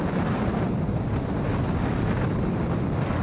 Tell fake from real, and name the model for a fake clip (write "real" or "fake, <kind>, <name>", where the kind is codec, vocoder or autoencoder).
real